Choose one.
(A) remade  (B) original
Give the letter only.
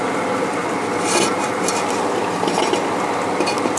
B